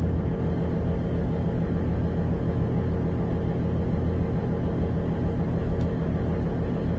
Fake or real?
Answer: real